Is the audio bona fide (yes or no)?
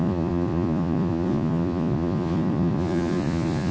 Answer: no